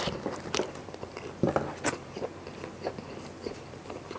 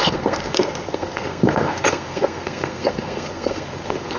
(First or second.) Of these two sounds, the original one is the first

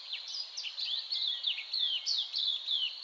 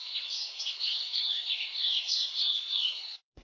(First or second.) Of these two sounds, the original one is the first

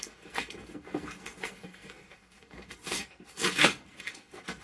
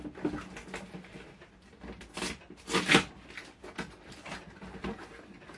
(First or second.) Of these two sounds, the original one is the second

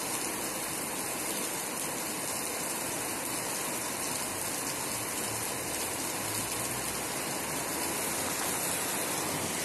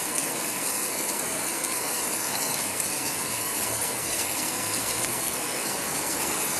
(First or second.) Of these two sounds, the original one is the first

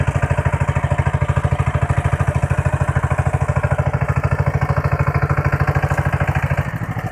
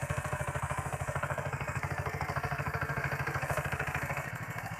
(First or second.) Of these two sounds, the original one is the first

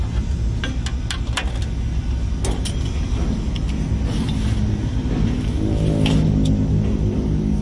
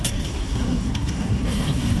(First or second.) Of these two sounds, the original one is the first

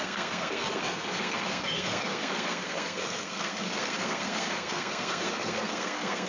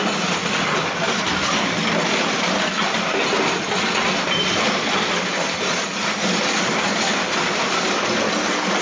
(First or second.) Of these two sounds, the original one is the second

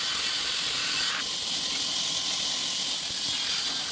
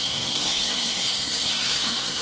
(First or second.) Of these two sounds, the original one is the first